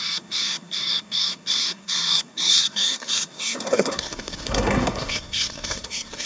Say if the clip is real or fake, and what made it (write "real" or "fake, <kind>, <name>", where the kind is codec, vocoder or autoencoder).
fake, codec, SNAC